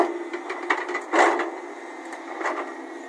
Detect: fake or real real